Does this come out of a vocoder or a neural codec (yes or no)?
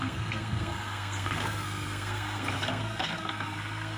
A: yes